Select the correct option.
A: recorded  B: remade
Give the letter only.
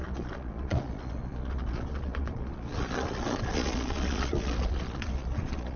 B